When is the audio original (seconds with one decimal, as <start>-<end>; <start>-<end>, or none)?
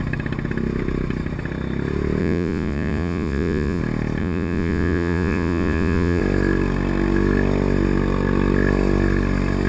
0.0-2.2; 3.8-4.2; 6.2-9.7